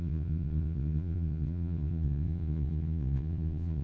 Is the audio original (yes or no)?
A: no